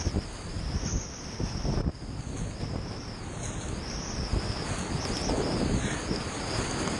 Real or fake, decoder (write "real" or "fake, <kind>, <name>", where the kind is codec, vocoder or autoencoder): real